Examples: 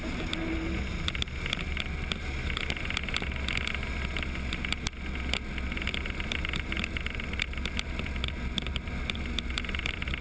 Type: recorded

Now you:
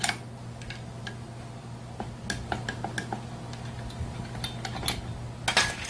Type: recorded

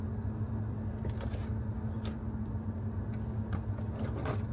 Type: recorded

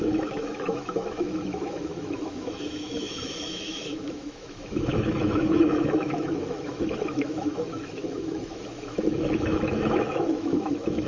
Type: remade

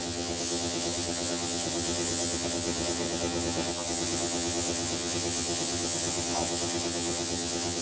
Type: remade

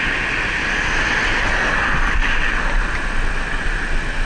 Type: recorded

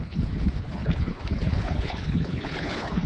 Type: remade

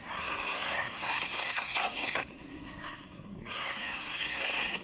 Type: remade